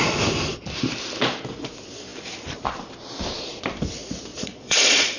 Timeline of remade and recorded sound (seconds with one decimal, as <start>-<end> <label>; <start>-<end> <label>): 0.0-4.3 recorded; 4.3-5.2 remade